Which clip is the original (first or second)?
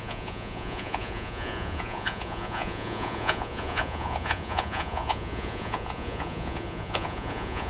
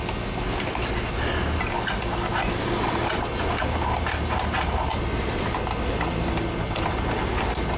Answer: second